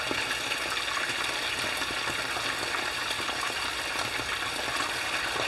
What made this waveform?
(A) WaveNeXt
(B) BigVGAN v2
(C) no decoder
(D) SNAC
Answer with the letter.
C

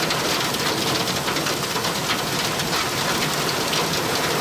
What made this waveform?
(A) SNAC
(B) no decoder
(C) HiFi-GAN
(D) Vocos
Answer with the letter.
B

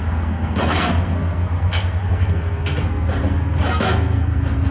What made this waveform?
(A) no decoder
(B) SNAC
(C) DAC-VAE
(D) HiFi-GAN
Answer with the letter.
B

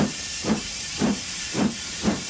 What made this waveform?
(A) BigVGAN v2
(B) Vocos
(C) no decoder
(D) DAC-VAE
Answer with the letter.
A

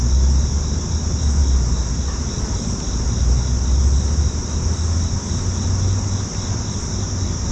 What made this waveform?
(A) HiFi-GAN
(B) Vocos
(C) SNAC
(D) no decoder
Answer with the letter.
D